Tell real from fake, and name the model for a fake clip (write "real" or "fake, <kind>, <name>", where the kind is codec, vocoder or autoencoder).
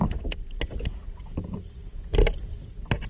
real